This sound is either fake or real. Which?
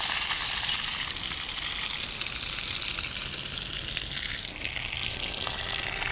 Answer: real